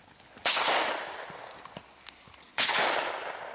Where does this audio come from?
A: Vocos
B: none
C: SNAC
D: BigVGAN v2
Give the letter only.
B